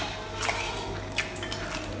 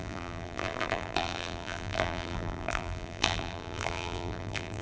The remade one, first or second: second